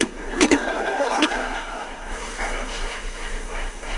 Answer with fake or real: fake